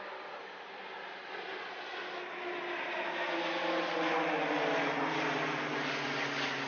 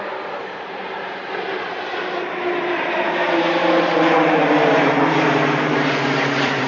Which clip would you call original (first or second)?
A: first